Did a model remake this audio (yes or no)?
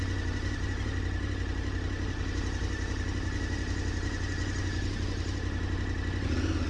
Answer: no